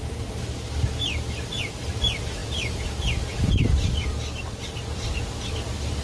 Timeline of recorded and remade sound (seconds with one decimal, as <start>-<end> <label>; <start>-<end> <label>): 0.0-6.0 recorded